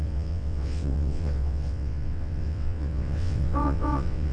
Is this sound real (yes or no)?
no